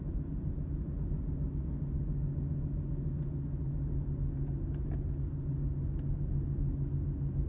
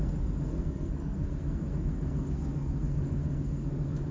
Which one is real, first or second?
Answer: first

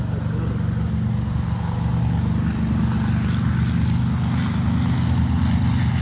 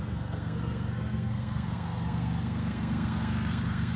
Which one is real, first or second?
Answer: first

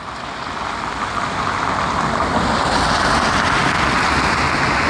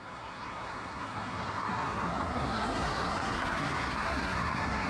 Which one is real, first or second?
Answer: first